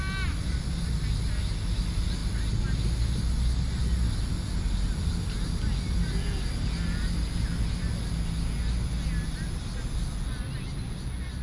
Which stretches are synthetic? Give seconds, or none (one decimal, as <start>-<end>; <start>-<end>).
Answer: none